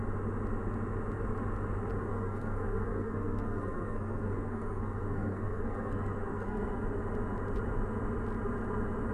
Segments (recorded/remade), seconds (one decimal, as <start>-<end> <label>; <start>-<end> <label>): 0.0-2.1 recorded; 2.1-6.8 remade; 6.8-9.1 recorded